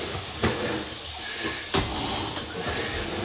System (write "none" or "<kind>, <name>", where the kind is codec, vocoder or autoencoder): none